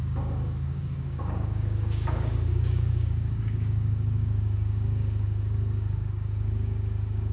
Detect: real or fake fake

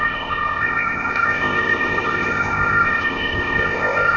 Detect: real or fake fake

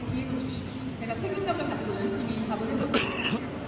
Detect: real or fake real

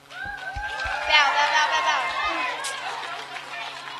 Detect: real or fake real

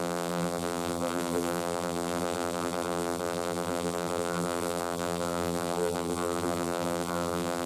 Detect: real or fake fake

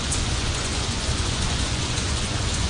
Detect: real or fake fake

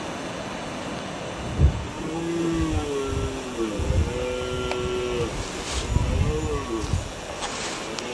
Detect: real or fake real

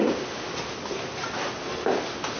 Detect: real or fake real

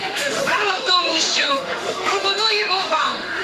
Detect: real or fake fake